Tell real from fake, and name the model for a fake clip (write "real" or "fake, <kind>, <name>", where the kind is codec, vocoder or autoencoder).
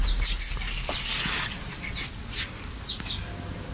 real